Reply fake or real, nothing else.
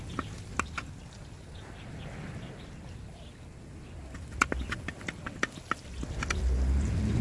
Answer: real